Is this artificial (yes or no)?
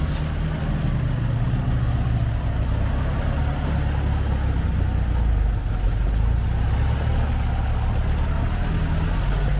no